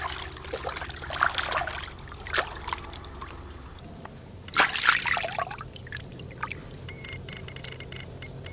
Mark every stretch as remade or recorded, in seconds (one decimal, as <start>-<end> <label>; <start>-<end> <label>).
0.0-8.5 recorded